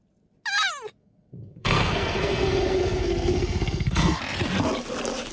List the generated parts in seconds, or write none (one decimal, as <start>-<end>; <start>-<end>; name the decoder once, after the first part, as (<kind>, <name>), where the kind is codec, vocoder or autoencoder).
1.0-4.2 (codec, SNAC)